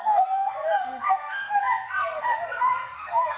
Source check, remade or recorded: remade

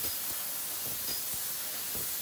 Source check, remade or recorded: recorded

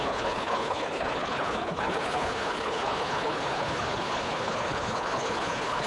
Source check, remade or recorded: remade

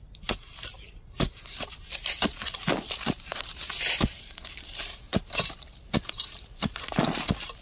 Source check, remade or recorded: remade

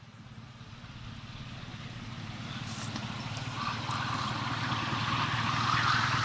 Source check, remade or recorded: recorded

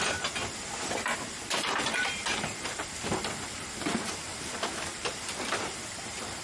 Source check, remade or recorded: remade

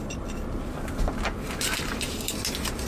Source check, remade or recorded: recorded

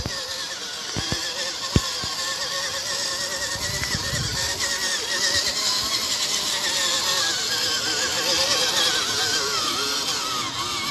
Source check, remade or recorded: recorded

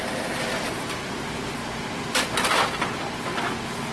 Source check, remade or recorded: recorded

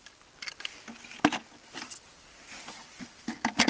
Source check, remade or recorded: recorded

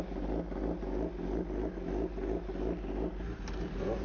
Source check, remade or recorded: recorded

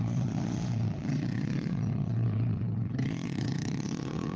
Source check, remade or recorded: remade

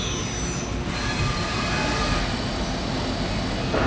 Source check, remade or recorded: recorded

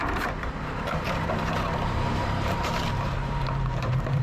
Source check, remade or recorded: remade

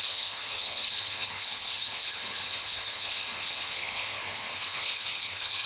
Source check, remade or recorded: remade